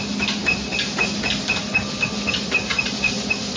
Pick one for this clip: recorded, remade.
recorded